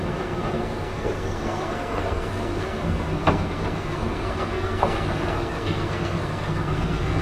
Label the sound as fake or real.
fake